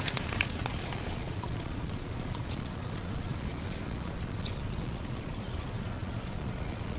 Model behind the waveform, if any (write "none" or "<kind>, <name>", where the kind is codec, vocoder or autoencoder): vocoder, Vocos